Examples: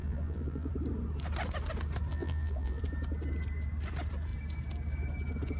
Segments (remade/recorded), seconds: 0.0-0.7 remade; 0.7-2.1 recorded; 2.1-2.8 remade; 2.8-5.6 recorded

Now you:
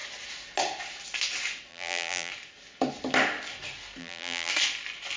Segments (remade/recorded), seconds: 0.0-1.7 recorded; 1.7-2.3 remade; 2.3-4.0 recorded; 4.0-4.5 remade; 4.5-5.2 recorded